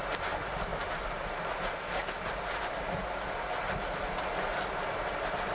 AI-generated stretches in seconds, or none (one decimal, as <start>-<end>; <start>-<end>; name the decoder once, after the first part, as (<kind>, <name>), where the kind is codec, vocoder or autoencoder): none